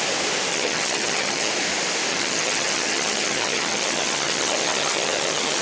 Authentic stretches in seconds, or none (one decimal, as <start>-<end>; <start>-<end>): 0.0-0.5; 1.5-2.1